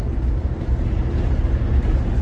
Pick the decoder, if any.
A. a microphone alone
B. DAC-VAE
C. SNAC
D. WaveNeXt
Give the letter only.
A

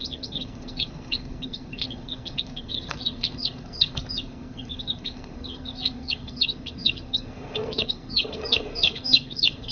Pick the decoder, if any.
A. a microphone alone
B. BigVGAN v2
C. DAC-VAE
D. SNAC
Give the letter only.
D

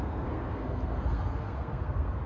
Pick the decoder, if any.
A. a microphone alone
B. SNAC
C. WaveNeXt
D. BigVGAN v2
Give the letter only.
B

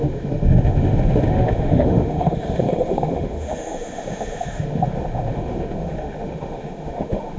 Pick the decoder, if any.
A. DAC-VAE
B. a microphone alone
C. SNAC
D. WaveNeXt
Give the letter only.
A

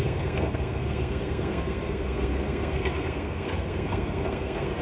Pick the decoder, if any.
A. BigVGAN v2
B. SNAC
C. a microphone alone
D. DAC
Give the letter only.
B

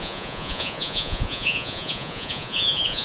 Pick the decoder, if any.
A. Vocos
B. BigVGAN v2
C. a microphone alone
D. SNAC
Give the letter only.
A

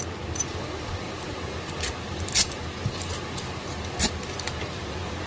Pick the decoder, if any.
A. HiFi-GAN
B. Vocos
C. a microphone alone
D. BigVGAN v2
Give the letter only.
C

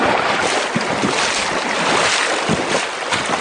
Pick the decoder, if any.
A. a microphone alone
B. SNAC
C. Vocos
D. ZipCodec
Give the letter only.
A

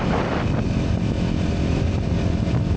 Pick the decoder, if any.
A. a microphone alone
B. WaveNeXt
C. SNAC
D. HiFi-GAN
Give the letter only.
A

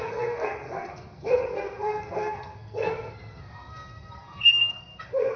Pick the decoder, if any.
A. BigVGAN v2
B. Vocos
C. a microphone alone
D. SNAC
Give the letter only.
D